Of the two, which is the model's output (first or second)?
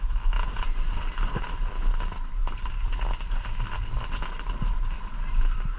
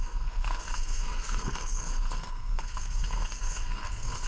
second